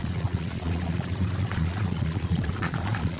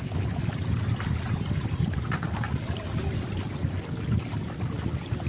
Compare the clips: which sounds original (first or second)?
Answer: second